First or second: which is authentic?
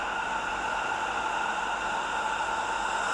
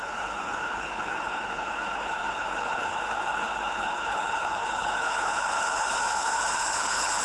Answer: first